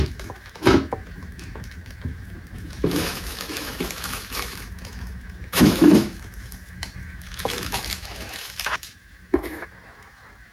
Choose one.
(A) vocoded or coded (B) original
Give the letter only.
A